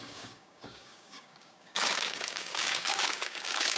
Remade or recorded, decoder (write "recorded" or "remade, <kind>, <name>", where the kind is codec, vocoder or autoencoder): remade, codec, DAC